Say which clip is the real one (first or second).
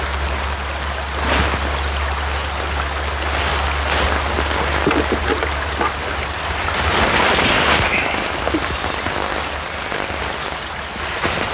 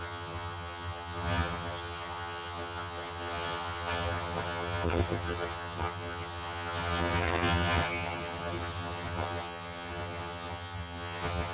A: first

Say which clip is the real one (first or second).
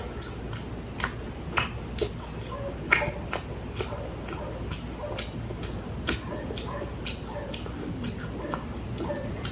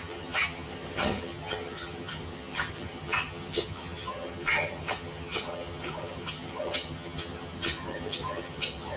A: first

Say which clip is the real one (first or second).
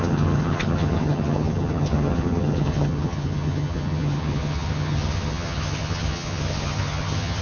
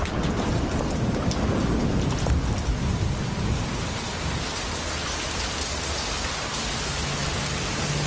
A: second